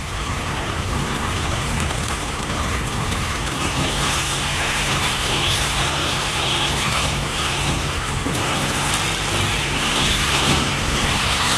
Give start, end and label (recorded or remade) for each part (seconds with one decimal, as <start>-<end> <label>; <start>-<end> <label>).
0.0-8.9 remade; 8.9-9.6 recorded; 9.6-11.6 remade

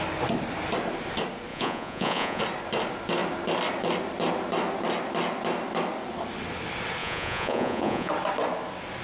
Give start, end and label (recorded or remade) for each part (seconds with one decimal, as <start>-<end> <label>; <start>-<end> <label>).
0.0-1.5 recorded; 1.5-2.4 remade; 2.4-7.0 recorded; 7.0-8.1 remade; 8.1-9.0 recorded

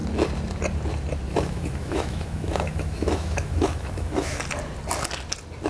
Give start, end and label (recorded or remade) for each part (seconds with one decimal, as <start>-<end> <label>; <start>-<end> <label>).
0.0-1.3 recorded; 1.3-4.4 remade; 4.4-5.7 recorded

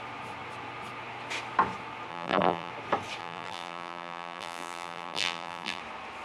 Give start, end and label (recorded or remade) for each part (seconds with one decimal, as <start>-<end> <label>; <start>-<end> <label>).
0.0-2.1 recorded; 2.1-2.7 remade; 2.7-3.2 recorded; 3.2-5.8 remade; 5.8-6.2 recorded

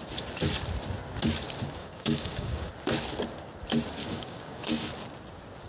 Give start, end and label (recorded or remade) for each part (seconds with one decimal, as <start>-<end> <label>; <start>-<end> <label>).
0.0-1.8 recorded; 1.8-2.7 remade; 2.7-4.0 recorded; 4.0-4.9 remade; 4.9-5.7 recorded

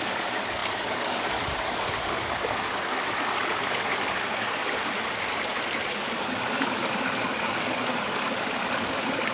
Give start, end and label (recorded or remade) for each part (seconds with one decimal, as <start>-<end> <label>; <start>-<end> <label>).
0.0-4.6 remade; 4.6-5.9 recorded; 5.9-9.3 remade